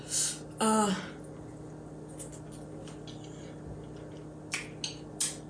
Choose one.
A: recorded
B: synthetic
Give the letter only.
A